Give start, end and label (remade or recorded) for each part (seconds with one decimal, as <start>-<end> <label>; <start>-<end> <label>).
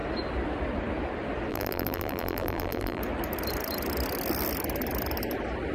0.0-1.5 recorded; 1.5-3.0 remade; 3.0-5.7 recorded